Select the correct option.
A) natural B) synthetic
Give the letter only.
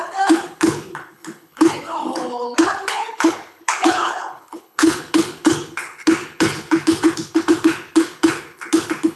B